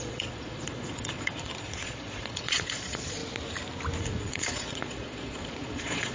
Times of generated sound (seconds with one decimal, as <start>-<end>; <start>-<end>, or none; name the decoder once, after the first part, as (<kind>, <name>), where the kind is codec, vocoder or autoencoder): 0.0-3.2 (vocoder, Vocos); 4.0-6.1